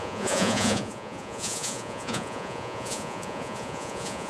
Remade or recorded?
remade